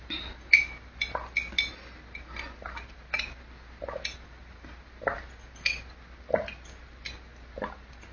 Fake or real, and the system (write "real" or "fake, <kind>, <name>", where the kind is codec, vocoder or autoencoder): real